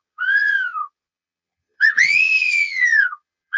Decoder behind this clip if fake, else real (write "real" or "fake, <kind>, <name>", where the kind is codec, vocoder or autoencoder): fake, vocoder, Vocos